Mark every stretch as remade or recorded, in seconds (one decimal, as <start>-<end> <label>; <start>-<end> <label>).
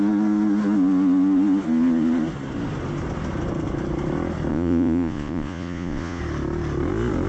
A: 0.0-4.5 recorded; 4.5-6.2 remade; 6.2-7.3 recorded